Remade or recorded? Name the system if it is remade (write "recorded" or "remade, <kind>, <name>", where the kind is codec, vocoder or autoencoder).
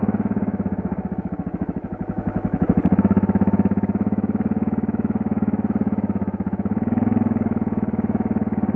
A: remade, autoencoder, DAC-VAE